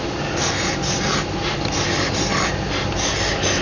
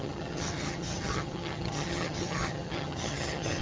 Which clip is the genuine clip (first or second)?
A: first